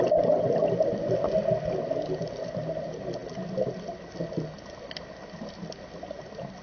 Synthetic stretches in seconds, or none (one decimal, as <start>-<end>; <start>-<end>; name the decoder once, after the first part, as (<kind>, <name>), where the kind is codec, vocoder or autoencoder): none